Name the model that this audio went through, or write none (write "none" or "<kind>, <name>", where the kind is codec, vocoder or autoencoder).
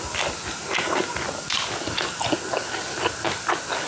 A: none